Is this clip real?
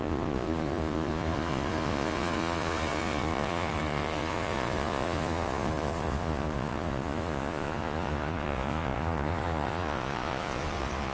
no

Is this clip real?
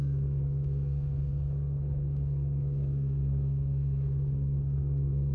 no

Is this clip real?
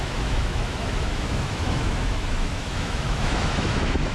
no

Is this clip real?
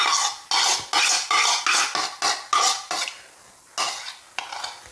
yes